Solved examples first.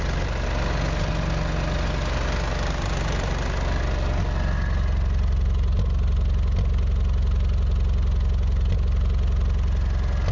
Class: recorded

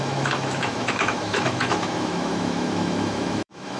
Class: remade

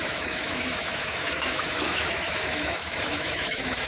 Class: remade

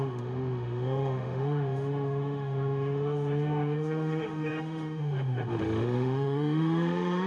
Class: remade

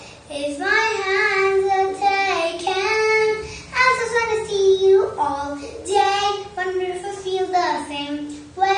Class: recorded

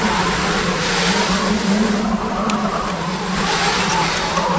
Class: recorded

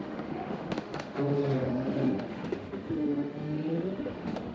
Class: remade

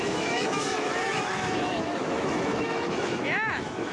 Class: remade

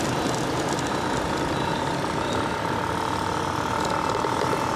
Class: recorded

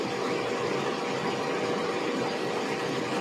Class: recorded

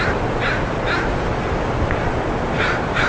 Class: recorded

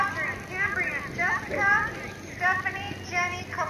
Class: recorded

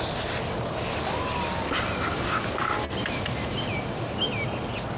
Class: recorded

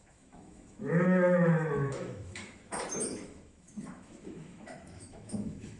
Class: remade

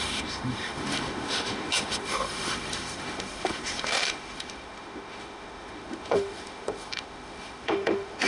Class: remade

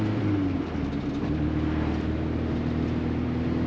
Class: recorded